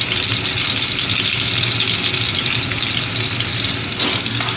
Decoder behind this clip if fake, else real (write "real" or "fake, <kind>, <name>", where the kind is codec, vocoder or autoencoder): real